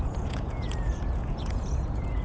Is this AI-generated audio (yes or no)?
yes